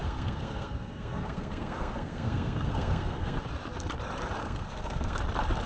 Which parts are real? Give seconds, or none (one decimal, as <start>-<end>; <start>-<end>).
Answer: 3.4-4.4; 5.2-5.7